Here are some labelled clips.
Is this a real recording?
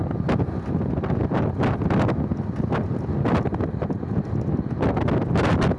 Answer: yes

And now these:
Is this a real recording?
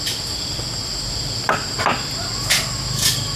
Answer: yes